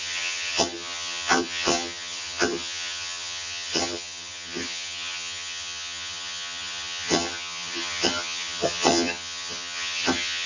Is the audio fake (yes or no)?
yes